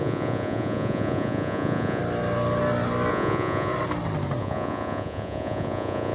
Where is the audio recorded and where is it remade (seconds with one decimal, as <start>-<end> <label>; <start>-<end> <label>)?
0.0-2.0 remade; 2.0-3.1 recorded; 3.1-3.7 remade; 3.7-4.4 recorded; 4.4-6.1 remade